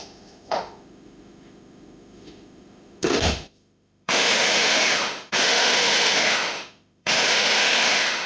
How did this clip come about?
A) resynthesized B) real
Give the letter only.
A